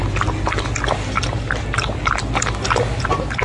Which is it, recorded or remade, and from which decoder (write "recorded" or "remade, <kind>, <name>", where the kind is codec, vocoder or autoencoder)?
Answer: recorded